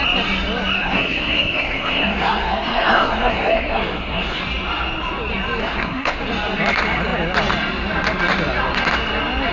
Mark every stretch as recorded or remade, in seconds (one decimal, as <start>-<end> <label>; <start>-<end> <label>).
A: 0.0-0.8 recorded; 0.8-4.4 remade; 4.4-5.6 recorded; 5.6-6.2 remade; 6.2-9.5 recorded